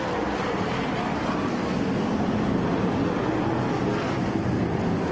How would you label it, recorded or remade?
recorded